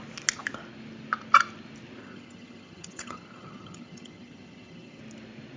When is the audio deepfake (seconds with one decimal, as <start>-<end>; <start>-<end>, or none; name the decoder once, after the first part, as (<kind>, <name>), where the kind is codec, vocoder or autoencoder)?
2.0-5.0 (vocoder, HiFi-GAN)